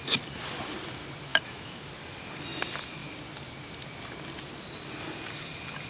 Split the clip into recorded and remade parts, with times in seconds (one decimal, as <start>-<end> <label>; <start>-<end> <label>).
0.0-1.3 recorded; 1.3-1.9 remade; 1.9-5.9 recorded